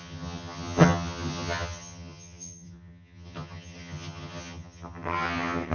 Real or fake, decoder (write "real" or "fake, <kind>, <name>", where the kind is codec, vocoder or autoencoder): fake, vocoder, HiFi-GAN